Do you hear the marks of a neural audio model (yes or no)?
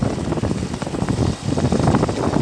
no